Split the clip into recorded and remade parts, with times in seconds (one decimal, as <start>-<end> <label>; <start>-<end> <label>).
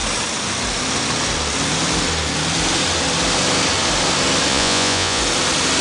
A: 0.0-4.5 recorded; 4.5-5.2 remade; 5.2-5.8 recorded